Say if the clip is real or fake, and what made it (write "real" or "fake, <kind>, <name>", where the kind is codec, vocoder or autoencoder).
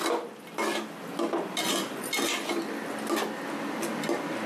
real